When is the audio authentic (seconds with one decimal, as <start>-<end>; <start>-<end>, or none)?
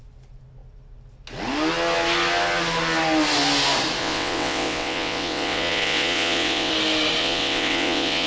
0.0-4.0; 6.7-7.2